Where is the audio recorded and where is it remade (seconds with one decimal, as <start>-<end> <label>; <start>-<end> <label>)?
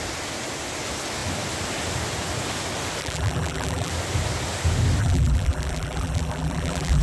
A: 0.0-3.0 recorded; 3.0-3.9 remade; 3.9-5.0 recorded; 5.0-7.0 remade